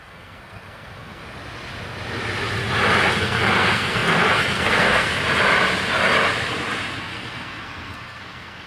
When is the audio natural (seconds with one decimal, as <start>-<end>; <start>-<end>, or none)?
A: 1.2-3.2; 5.2-7.0